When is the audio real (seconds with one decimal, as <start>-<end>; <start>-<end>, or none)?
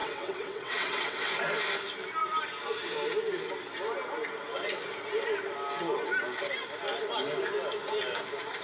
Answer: 1.3-8.6